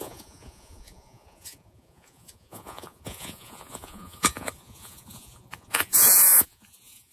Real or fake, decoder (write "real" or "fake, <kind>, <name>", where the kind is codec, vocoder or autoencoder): fake, vocoder, Vocos